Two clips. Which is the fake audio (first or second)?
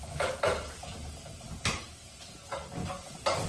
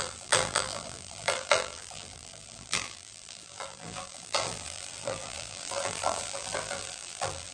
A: second